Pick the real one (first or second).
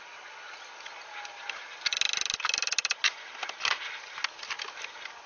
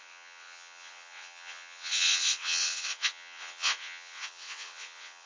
first